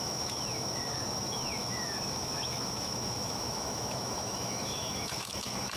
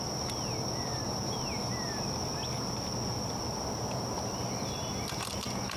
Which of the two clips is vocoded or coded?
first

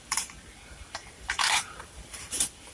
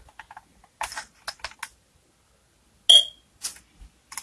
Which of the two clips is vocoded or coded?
first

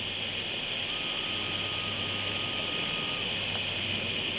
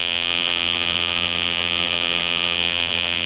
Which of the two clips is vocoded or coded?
second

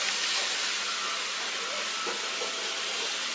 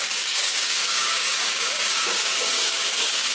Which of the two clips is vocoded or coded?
second